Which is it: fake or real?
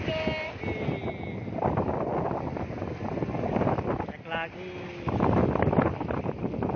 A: real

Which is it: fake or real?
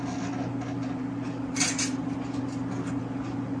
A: real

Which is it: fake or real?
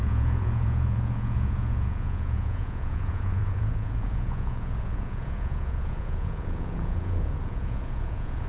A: fake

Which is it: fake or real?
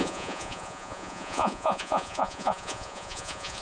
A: fake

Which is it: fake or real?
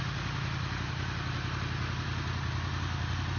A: real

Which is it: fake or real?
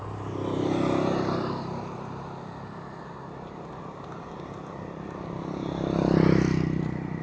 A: real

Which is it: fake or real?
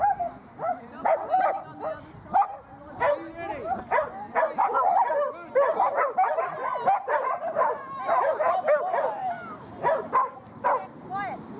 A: real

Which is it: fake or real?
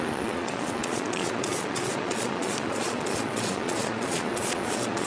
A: fake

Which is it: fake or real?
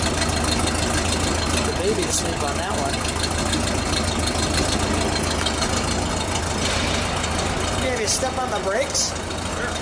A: real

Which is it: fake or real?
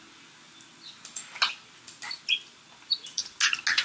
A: real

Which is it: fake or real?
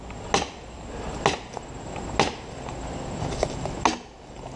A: real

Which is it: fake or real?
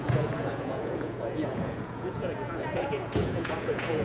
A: fake